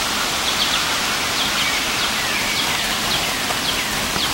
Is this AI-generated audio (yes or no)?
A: no